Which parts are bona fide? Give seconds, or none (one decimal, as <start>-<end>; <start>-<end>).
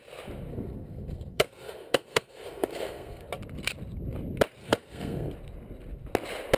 0.0-0.5; 3.3-4.6; 5.3-6.6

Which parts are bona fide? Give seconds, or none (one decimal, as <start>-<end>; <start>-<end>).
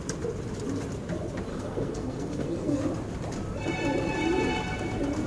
0.0-1.5; 2.8-5.3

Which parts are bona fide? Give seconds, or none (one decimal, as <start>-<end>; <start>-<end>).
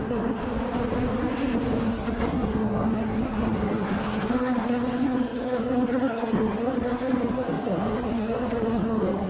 0.4-1.8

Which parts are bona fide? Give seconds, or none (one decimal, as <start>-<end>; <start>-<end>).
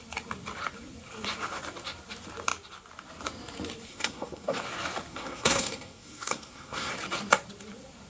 0.0-3.9; 4.6-5.1; 6.9-8.1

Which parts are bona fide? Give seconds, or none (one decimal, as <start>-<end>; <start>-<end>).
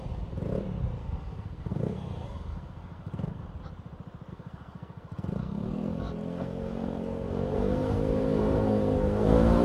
0.0-1.0; 3.4-4.3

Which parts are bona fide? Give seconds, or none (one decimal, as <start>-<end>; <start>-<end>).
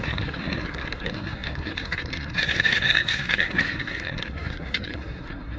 none